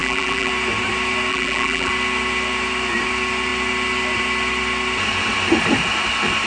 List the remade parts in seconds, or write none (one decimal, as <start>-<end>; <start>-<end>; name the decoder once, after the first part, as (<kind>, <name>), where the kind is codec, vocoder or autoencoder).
0.0-0.5 (vocoder, BigVGAN v2); 1.3-1.9